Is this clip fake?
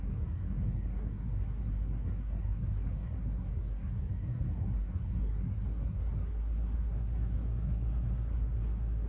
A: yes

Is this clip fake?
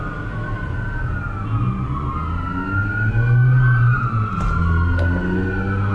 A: no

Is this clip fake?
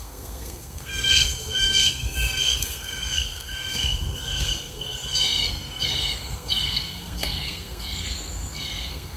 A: yes